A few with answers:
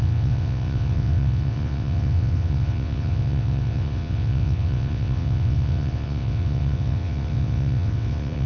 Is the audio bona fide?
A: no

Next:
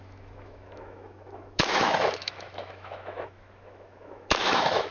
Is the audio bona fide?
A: no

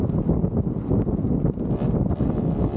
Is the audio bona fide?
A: yes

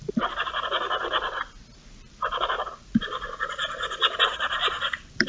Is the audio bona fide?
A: yes